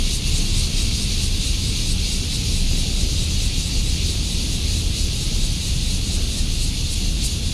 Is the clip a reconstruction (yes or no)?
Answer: no